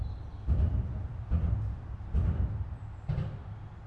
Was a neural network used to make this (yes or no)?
no